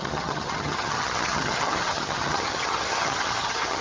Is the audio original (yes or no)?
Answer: no